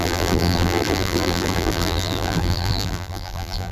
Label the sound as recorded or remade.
remade